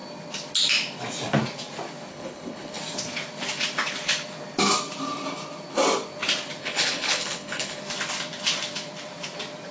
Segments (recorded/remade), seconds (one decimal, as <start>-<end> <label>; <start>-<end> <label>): 0.0-2.1 recorded; 2.1-2.8 remade; 2.8-6.6 recorded; 6.6-7.8 remade; 7.8-9.7 recorded